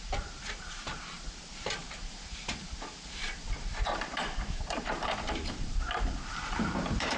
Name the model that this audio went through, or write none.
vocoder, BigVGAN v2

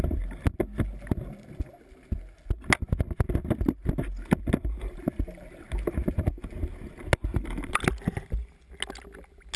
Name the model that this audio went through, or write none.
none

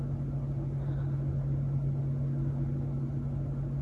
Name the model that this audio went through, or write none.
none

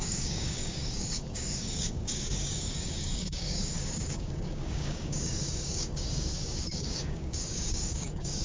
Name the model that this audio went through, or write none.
codec, DAC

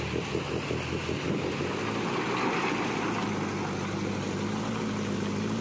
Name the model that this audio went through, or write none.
none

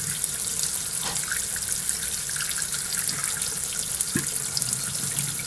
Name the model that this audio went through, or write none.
none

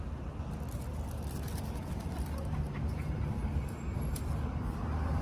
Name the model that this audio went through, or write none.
none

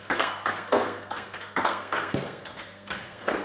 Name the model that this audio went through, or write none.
codec, SNAC